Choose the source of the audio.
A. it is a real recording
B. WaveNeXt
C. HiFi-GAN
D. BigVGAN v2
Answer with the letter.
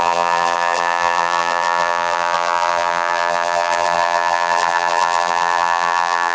D